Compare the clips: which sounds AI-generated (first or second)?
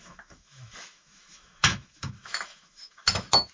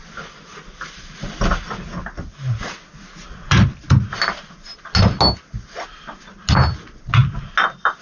first